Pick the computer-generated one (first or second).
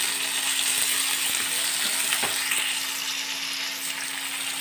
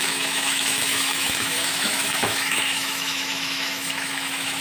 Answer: second